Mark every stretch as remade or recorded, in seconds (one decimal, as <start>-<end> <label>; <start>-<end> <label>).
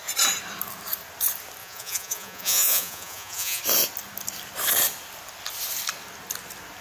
0.0-1.6 recorded; 1.6-3.6 remade; 3.6-6.8 recorded